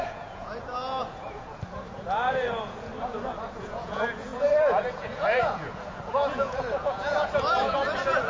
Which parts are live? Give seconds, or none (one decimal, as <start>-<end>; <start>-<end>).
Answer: 2.9-3.6